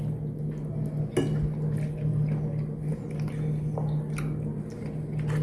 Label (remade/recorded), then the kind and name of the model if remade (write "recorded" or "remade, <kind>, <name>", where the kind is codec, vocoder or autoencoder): recorded